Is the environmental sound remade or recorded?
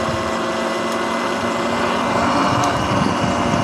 recorded